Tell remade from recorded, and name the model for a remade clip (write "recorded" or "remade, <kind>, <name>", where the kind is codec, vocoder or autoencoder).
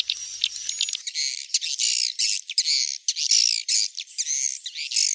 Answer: recorded